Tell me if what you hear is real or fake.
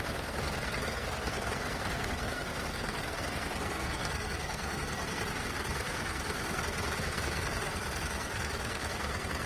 fake